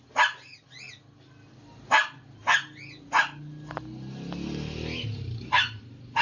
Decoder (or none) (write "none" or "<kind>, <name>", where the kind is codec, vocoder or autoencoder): none